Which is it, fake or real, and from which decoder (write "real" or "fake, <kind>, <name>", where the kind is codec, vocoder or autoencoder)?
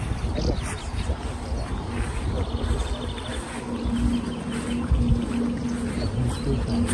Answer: real